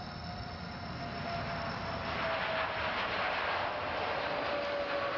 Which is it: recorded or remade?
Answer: recorded